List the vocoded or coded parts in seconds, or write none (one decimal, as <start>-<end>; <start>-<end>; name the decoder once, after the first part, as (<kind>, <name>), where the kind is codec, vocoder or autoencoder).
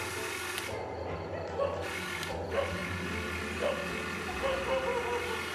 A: none